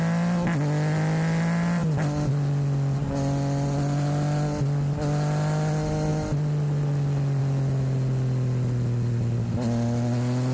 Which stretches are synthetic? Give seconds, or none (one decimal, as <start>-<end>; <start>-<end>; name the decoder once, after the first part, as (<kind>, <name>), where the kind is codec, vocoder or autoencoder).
none